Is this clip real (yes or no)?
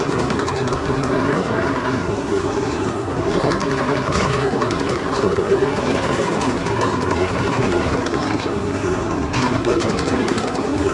no